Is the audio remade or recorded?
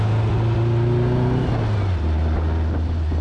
recorded